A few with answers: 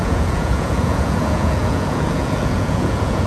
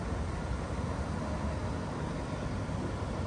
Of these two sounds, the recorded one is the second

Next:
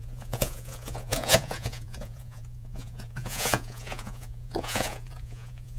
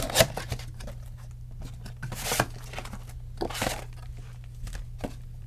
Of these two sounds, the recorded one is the second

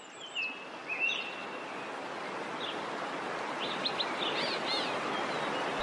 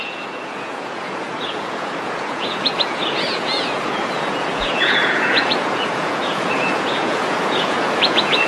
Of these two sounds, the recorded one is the first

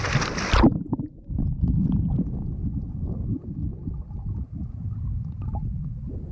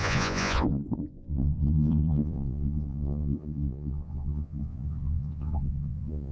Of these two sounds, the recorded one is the first